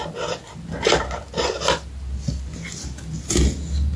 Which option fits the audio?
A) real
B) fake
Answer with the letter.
A